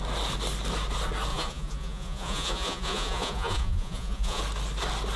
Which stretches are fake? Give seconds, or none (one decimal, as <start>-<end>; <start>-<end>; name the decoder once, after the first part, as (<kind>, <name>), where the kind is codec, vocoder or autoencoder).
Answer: 1.3-4.4 (vocoder, Vocos)